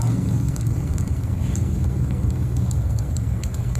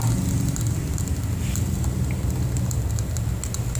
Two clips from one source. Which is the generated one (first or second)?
first